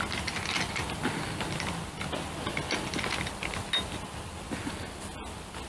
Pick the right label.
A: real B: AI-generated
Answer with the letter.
A